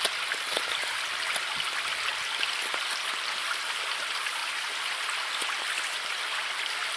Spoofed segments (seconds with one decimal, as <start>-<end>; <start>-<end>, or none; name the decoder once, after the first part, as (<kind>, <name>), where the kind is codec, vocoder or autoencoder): none